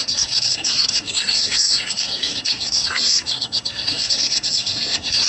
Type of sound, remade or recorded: remade